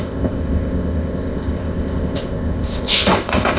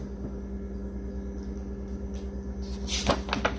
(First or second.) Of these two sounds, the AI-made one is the first